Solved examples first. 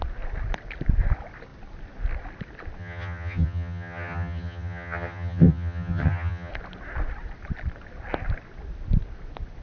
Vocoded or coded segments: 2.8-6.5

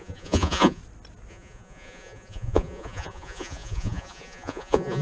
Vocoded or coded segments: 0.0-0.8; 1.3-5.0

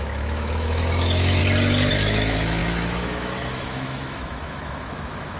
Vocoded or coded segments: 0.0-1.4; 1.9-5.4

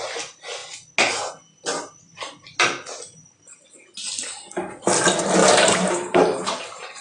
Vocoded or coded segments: 5.4-7.0

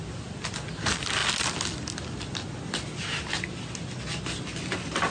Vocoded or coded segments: none

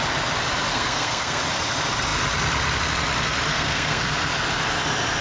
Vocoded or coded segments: 0.7-1.4; 3.5-4.1

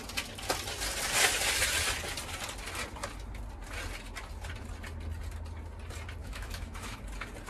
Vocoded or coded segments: 6.2-7.0